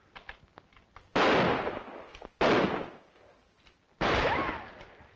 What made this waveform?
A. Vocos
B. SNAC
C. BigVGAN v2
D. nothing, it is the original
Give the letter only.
D